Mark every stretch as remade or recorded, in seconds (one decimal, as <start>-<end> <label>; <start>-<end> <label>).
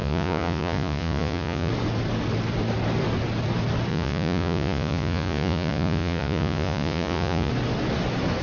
0.0-1.7 remade; 1.7-3.9 recorded; 3.9-7.5 remade; 7.5-8.4 recorded